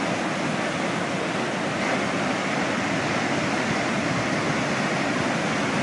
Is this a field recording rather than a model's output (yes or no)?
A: yes